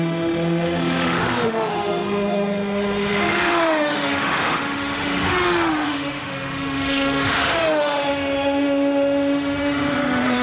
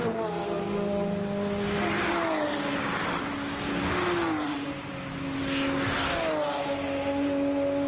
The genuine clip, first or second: second